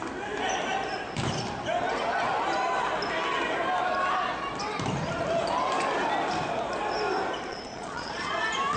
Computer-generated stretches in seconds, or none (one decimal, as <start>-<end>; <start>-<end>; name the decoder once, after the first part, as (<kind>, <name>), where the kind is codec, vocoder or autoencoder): 7.5-8.4 (vocoder, Vocos)